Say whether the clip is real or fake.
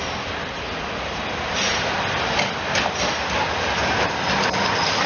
real